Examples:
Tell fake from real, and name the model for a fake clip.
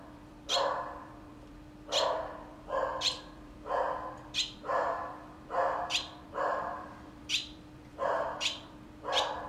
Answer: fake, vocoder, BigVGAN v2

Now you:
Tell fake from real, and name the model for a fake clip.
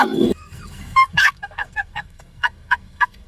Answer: fake, codec, SNAC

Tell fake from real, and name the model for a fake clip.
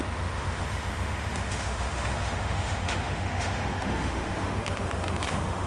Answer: fake, autoencoder, DAC-VAE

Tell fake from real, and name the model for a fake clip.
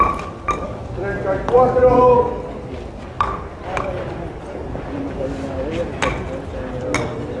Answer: real